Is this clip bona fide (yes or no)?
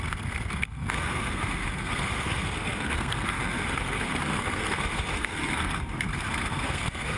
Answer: no